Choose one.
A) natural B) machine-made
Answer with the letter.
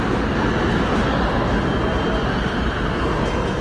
A